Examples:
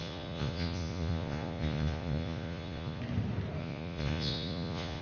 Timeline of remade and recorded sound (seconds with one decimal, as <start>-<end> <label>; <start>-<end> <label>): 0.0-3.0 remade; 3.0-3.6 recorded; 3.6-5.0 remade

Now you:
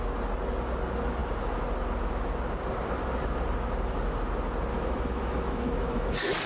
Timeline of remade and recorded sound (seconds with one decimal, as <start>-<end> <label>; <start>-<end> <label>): 0.0-4.7 recorded; 4.7-6.1 remade; 6.1-6.5 recorded

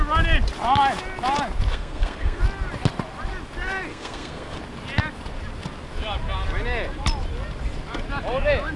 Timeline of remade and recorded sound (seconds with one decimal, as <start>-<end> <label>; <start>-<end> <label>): 0.0-1.7 recorded; 1.7-2.4 remade; 2.4-3.9 recorded; 3.9-4.6 remade; 4.6-8.8 recorded

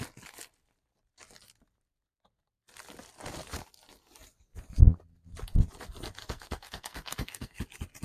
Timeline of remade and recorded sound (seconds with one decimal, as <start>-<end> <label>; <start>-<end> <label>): 0.0-6.2 recorded; 6.2-7.6 remade; 7.6-8.0 recorded

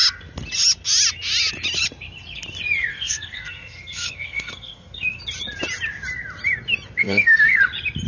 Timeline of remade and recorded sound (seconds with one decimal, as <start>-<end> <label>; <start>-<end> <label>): 0.0-2.9 recorded; 2.9-5.2 remade; 5.2-7.0 recorded; 7.0-7.6 remade; 7.6-8.1 recorded

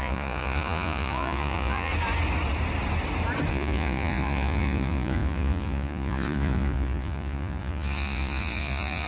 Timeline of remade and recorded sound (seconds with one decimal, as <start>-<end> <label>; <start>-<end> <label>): 0.0-1.9 remade; 1.9-3.5 recorded; 3.5-9.1 remade